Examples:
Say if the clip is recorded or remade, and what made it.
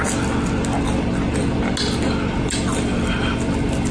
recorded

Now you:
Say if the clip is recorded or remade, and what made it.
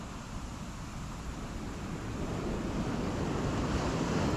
recorded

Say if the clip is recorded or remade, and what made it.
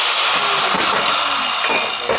recorded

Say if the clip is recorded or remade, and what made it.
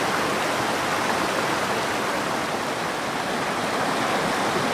recorded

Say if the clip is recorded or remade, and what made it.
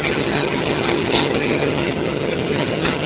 remade, vocoder, HiFi-GAN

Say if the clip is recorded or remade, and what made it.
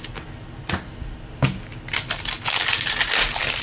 recorded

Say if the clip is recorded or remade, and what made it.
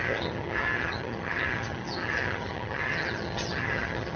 remade, vocoder, HiFi-GAN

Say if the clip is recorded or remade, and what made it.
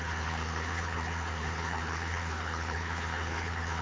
remade, codec, HILCodec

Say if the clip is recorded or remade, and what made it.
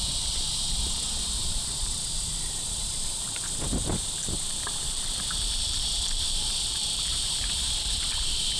remade, vocoder, BigVGAN v2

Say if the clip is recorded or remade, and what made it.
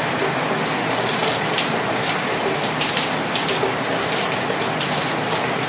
recorded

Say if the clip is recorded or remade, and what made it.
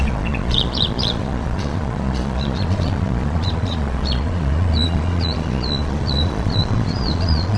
remade, vocoder, Vocos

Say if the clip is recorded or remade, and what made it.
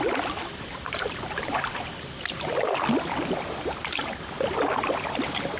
recorded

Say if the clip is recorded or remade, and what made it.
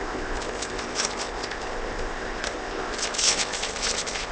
remade, codec, ZipCodec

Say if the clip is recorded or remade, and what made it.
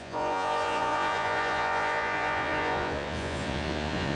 remade, vocoder, Vocos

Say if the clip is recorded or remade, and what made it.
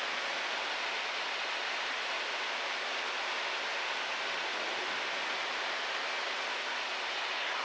recorded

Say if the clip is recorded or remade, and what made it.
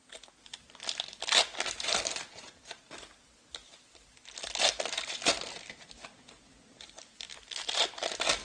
recorded